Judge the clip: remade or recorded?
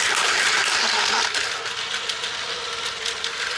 recorded